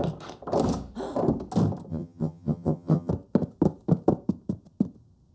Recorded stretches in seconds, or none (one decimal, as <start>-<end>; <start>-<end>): 0.0-1.9; 3.1-5.3